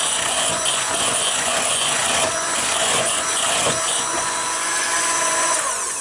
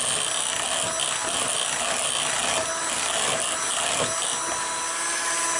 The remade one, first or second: first